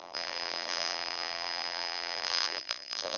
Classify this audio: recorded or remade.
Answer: remade